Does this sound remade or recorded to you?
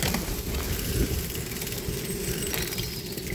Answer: remade